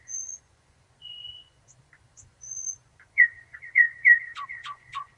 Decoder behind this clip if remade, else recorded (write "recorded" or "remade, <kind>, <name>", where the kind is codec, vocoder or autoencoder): remade, vocoder, Vocos